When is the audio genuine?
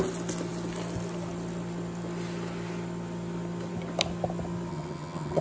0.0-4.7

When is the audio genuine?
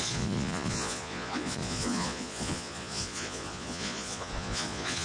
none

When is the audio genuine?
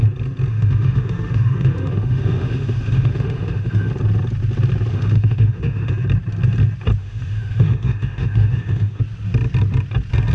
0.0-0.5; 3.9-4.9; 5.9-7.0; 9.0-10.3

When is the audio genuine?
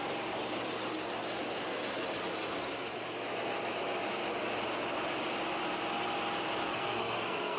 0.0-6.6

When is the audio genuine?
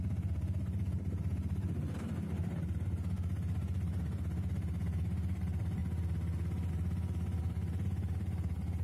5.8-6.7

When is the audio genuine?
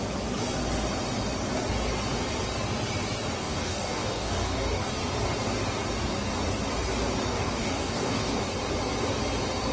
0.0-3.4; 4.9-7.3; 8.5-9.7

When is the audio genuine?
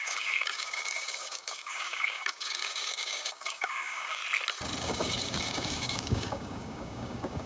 4.2-4.8